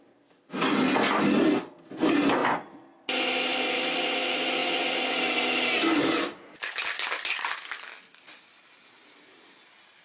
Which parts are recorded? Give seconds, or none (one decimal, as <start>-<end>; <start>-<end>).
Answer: 0.0-10.0